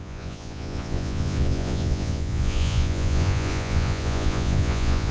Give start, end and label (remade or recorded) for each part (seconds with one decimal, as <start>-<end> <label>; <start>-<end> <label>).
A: 0.0-5.1 remade